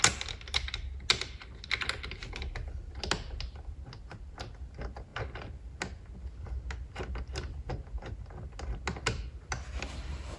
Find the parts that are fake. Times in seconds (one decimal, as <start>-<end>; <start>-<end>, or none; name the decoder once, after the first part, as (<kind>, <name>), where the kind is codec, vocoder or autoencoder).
none